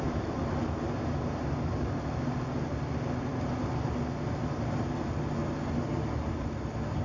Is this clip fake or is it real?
real